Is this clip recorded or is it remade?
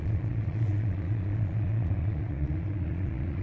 remade